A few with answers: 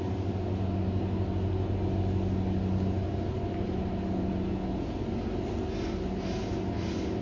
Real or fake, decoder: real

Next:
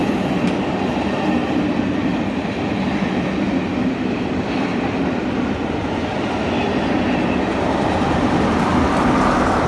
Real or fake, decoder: real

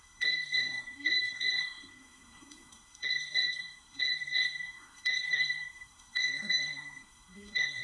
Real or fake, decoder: fake, codec, SNAC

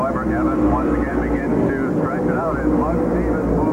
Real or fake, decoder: real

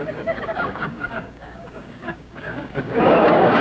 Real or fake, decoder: fake, codec, DAC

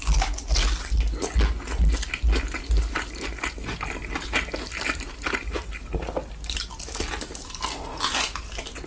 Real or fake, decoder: real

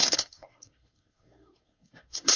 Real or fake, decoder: fake, codec, SNAC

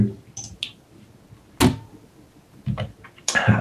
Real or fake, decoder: real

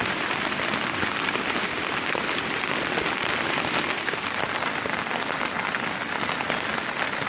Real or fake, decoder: fake, vocoder, BigVGAN v2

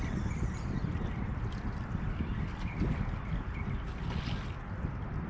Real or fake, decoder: real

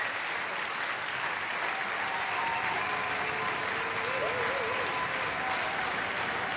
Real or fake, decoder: real